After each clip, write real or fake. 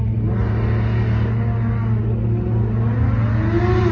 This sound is real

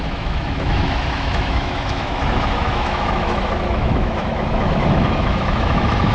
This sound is fake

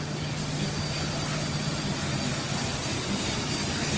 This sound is real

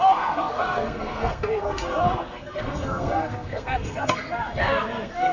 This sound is fake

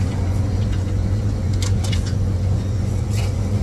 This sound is fake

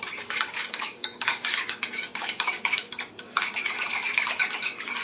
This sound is fake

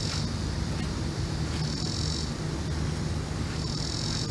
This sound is real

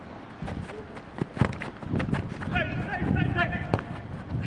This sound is real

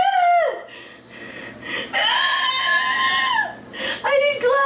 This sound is real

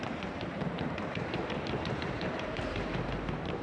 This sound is fake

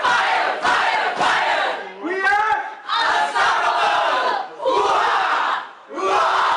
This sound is real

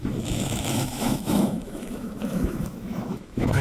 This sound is fake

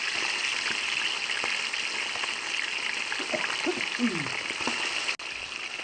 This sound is real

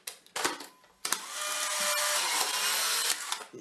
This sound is real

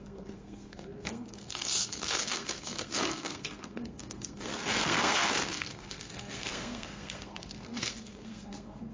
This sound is fake